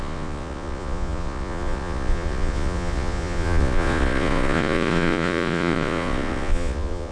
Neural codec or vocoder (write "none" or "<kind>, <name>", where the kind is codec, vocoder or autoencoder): vocoder, Vocos